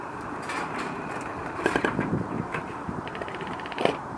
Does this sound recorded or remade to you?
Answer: remade